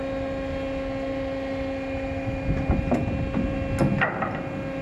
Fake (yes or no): no